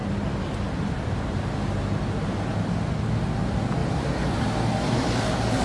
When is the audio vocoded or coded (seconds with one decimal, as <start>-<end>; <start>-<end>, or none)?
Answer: 3.8-5.1